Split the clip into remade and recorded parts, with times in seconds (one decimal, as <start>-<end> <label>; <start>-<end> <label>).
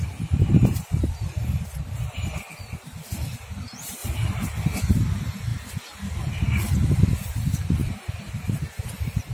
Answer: 0.0-7.8 recorded; 7.8-8.4 remade; 8.4-9.3 recorded